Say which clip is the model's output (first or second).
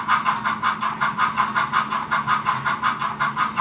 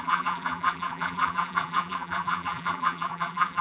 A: second